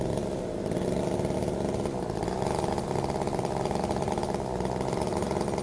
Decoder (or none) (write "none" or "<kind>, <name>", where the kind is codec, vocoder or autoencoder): none